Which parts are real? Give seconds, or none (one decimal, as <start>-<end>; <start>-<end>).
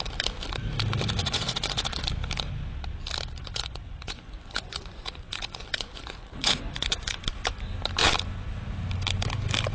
0.0-1.2; 1.8-3.4; 7.2-9.7